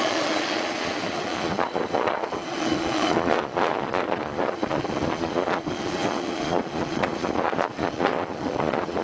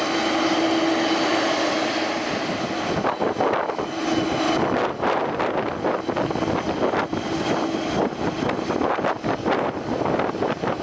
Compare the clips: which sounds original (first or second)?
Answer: second